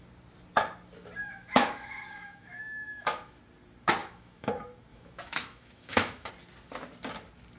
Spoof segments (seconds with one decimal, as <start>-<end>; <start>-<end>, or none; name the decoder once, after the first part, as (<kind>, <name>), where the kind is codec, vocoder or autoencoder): 1.2-3.4 (autoencoder, DAC-VAE); 4.0-4.5; 4.9-6.3